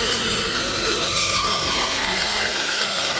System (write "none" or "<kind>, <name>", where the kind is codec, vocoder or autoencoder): codec, SNAC